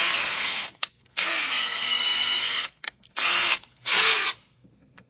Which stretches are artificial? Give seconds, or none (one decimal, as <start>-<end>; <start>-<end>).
0.0-5.1